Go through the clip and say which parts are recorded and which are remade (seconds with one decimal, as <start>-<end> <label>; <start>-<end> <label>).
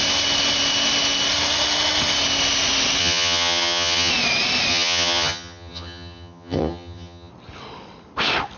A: 0.0-3.0 recorded; 3.0-4.1 remade; 4.1-4.7 recorded; 4.7-7.3 remade; 7.3-8.6 recorded